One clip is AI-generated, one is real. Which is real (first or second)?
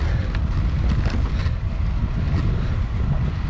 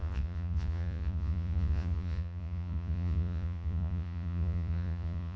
first